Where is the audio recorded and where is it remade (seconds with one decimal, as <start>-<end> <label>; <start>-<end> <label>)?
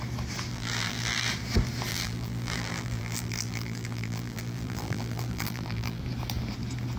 0.0-0.5 recorded; 0.5-1.3 remade; 1.3-1.9 recorded; 1.9-6.0 remade; 6.0-7.0 recorded